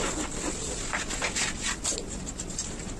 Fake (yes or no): no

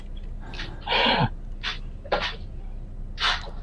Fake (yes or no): no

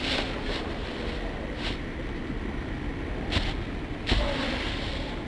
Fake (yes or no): no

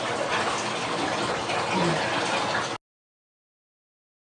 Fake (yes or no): no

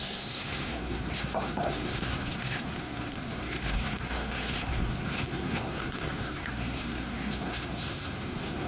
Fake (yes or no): yes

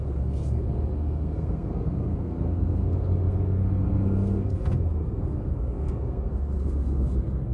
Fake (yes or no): yes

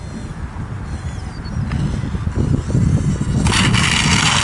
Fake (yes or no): no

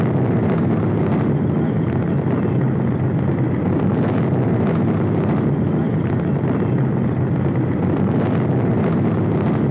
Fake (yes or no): no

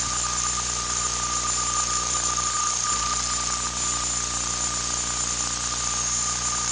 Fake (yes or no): no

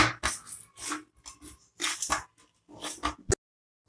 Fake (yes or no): no